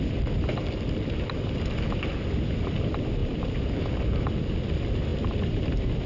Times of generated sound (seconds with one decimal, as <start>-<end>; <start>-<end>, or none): 3.2-3.8